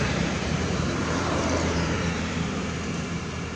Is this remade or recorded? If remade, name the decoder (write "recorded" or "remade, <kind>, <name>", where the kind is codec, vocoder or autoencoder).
remade, vocoder, BigVGAN v2